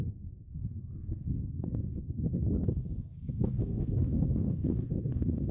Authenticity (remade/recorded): remade